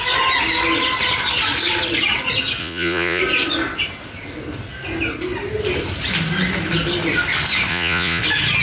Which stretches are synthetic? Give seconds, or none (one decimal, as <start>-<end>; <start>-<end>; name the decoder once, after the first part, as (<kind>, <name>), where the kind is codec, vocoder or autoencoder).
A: 2.6-3.2 (vocoder, Vocos); 7.7-8.2